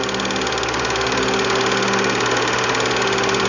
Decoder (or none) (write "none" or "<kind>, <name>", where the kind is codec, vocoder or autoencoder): none